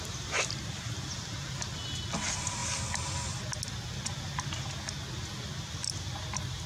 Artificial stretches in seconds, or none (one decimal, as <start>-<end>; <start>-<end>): none